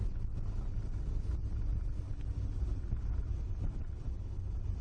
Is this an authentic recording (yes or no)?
yes